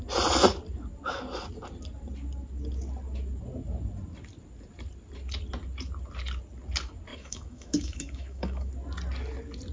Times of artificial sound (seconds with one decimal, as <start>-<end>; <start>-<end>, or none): 7.1-8.7